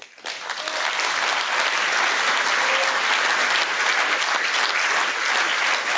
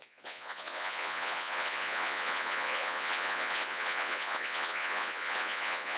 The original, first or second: first